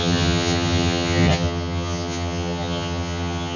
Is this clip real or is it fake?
fake